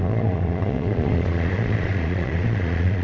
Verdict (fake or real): fake